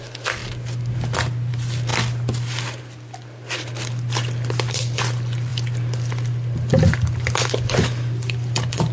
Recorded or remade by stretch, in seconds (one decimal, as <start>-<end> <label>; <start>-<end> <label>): 0.0-0.4 remade; 0.4-1.5 recorded; 1.5-1.9 remade; 1.9-2.8 recorded; 2.8-8.9 remade